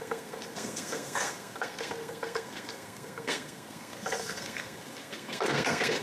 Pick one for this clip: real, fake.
fake